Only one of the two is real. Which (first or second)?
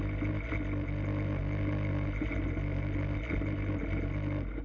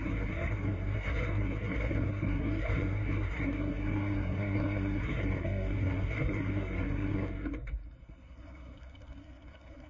first